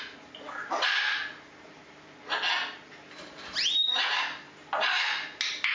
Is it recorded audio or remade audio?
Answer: recorded